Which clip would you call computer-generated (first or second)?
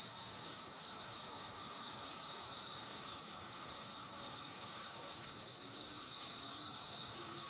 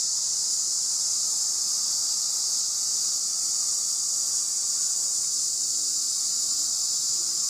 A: first